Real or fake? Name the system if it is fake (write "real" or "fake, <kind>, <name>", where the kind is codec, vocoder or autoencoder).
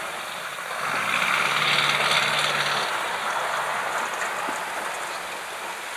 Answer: real